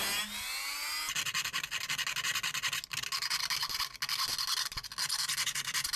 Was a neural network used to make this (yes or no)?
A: no